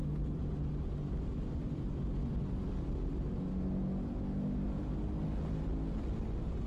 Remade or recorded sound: recorded